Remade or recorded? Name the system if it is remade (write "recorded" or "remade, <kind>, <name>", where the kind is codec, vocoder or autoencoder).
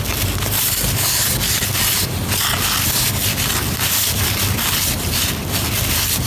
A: recorded